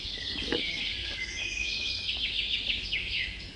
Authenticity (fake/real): fake